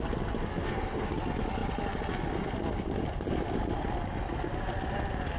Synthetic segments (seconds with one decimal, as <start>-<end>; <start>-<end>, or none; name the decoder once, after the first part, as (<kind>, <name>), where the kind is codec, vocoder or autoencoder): 0.5-1.1 (codec, SNAC)